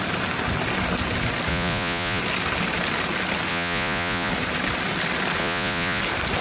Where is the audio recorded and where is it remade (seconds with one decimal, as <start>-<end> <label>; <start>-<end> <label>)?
0.0-1.5 recorded; 1.5-2.2 remade; 2.2-3.5 recorded; 3.5-4.3 remade; 4.3-5.4 recorded; 5.4-6.0 remade; 6.0-6.4 recorded